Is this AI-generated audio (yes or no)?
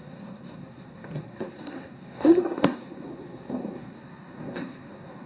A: yes